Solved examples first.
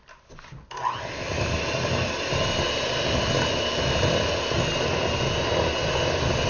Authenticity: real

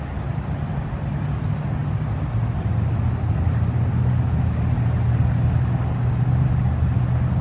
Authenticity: real